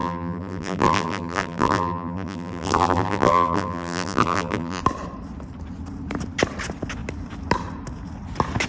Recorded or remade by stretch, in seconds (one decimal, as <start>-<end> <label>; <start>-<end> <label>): 0.0-4.8 remade; 4.8-8.7 recorded